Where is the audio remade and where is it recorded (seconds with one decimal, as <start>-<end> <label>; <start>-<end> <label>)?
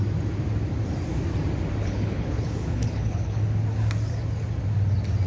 0.0-1.8 recorded; 1.8-3.4 remade; 3.4-5.3 recorded